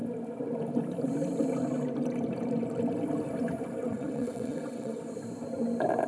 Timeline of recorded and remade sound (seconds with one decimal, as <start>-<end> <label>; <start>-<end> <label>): 0.0-3.8 recorded; 3.8-5.0 remade; 5.0-6.1 recorded